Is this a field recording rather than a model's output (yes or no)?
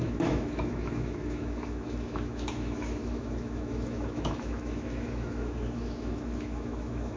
no